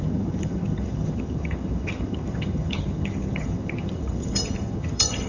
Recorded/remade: remade